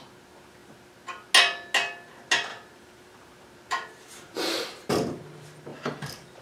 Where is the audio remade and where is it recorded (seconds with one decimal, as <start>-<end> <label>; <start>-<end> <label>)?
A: 0.0-2.5 recorded; 2.5-5.2 remade; 5.2-5.7 recorded; 5.7-6.4 remade